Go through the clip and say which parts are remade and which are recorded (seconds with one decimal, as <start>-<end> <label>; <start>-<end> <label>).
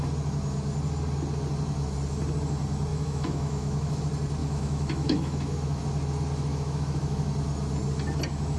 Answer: 0.0-2.9 recorded; 2.9-4.0 remade; 4.0-4.4 recorded; 4.4-5.8 remade; 5.8-6.5 recorded; 6.5-7.2 remade; 7.2-8.6 recorded